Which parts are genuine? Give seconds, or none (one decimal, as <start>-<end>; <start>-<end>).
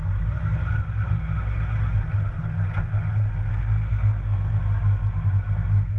0.0-3.5; 4.6-6.0